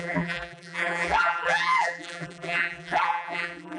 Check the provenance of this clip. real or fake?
fake